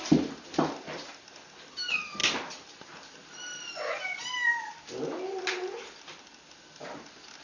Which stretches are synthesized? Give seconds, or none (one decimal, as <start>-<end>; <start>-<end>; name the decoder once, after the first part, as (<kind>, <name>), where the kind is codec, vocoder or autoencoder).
none